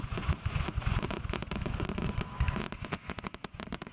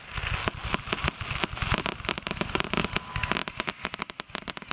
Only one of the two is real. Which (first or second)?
second